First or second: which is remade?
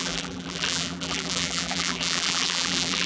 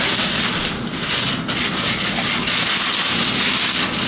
first